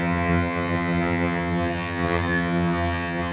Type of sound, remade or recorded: remade